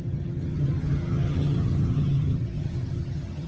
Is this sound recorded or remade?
remade